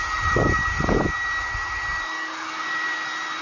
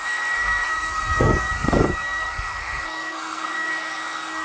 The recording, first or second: first